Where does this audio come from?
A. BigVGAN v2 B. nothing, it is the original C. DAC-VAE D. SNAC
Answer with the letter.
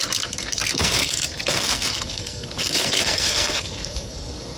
D